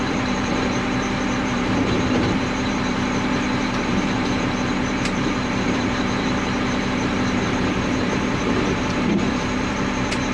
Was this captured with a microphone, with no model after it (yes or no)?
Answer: no